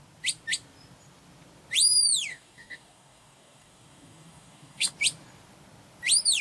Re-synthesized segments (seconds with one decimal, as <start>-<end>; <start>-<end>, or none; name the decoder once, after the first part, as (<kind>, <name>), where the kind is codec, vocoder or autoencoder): 2.3-4.9 (codec, DAC)